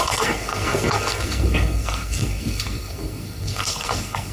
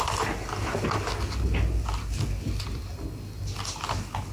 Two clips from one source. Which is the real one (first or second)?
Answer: second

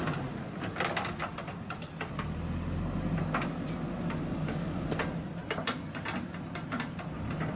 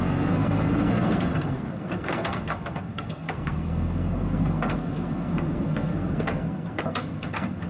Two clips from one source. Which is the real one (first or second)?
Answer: first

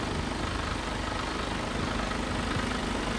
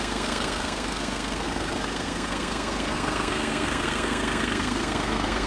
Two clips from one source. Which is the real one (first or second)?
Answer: first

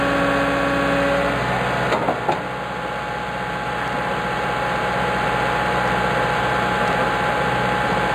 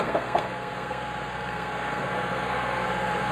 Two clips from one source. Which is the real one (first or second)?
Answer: first